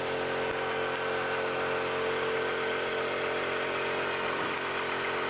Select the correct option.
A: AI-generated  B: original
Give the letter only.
B